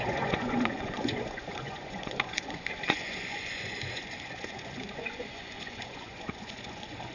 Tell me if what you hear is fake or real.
fake